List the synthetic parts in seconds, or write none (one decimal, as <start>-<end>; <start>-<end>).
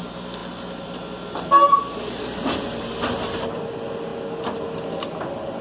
none